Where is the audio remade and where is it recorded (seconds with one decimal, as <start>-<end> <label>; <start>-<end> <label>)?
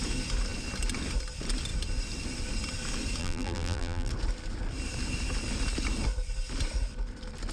0.0-3.2 recorded; 3.2-4.1 remade; 4.1-7.5 recorded